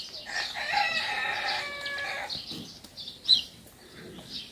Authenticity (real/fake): real